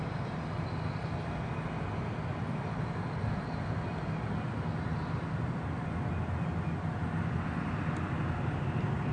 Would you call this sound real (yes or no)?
yes